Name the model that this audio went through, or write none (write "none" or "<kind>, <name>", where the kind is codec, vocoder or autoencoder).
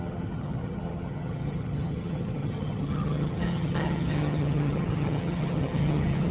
vocoder, HiFi-GAN